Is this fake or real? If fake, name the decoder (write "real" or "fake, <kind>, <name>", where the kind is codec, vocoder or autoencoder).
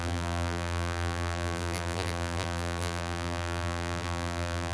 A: fake, vocoder, BigVGAN v2